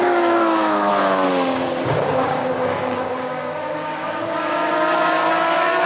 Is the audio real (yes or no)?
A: no